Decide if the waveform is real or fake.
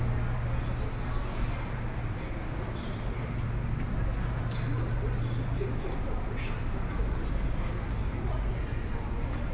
real